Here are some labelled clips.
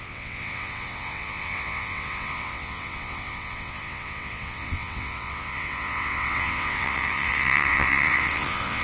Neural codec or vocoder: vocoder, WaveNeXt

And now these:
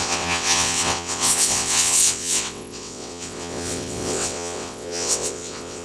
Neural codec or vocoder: vocoder, WaveNeXt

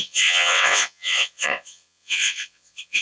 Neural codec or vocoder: vocoder, WaveNeXt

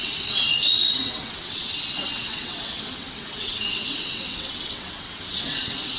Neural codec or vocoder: vocoder, WaveNeXt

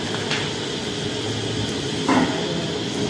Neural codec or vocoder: none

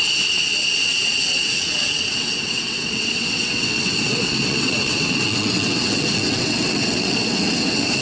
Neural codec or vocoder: vocoder, WaveNeXt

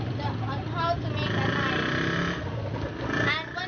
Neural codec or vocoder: none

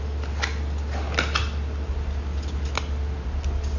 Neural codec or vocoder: none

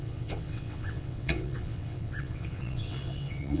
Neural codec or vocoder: vocoder, WaveNeXt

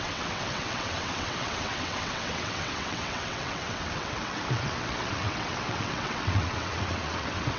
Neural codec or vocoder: vocoder, WaveNeXt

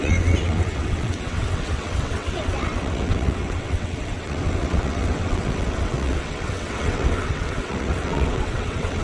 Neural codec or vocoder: vocoder, WaveNeXt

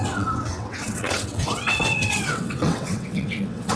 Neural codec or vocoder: vocoder, WaveNeXt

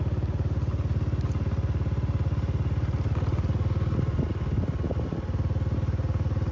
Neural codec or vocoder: none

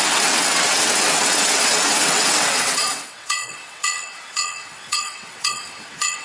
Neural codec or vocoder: vocoder, WaveNeXt